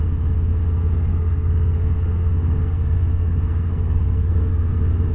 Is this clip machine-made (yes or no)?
yes